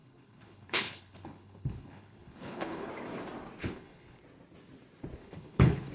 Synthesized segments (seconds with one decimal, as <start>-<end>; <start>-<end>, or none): 0.0-2.9; 3.6-4.2; 5.2-5.9

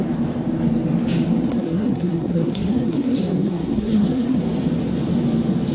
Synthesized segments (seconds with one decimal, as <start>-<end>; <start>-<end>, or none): 1.5-4.4